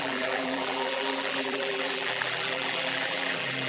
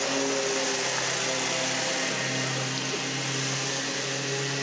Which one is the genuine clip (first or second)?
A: second